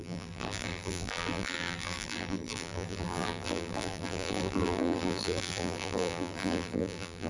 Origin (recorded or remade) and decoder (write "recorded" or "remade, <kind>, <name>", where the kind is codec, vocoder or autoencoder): remade, vocoder, BigVGAN v2